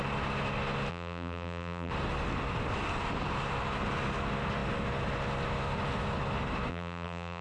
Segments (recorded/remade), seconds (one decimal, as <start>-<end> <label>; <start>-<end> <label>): 0.0-0.9 recorded; 0.9-1.9 remade; 1.9-6.7 recorded; 6.7-7.4 remade

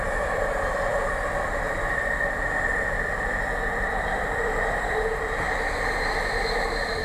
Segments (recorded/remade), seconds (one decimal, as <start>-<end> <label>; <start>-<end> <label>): 0.0-7.0 remade

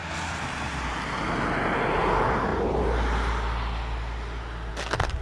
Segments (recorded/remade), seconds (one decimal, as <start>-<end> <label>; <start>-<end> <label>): 0.0-5.2 recorded